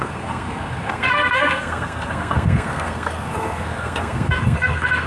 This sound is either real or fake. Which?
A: fake